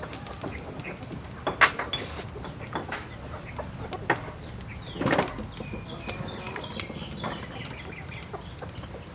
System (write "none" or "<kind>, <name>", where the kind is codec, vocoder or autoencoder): none